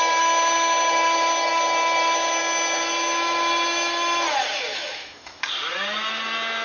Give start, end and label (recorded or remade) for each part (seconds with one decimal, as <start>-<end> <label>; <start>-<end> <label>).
0.0-4.7 recorded; 4.7-5.4 remade; 5.4-6.6 recorded